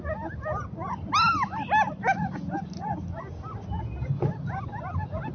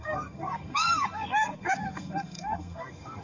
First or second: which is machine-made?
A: second